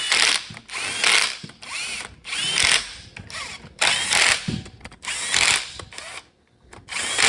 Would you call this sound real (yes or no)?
yes